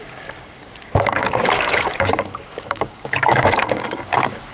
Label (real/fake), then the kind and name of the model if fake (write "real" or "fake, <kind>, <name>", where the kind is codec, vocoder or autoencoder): fake, codec, DAC